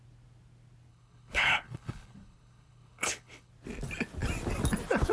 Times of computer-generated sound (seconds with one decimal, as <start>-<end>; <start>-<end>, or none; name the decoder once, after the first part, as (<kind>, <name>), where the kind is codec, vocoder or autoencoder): 0.9-3.5 (codec, HILCodec)

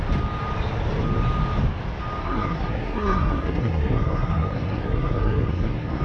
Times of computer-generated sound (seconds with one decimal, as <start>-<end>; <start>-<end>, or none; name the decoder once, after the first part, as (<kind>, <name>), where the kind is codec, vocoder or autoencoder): 2.2-6.0 (codec, SNAC)

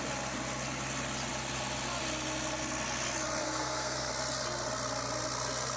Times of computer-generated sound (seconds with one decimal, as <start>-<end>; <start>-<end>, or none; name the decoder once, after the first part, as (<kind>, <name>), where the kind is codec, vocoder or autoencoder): 3.4-4.1 (codec, SNAC)